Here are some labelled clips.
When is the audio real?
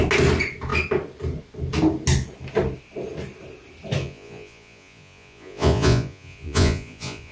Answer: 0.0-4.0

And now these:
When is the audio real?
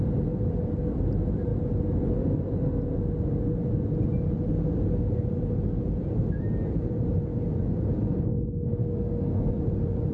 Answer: 0.0-8.8; 9.5-10.1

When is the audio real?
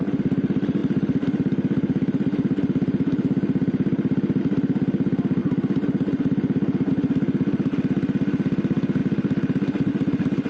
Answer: 0.0-10.5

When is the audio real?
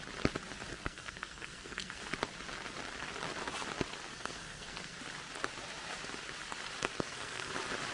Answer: 0.0-0.7; 2.0-4.1; 5.0-6.8; 7.5-7.9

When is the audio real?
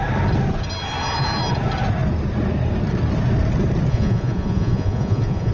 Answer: 0.0-3.9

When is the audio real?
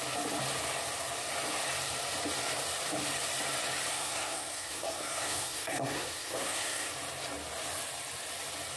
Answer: 0.0-3.9; 6.9-8.8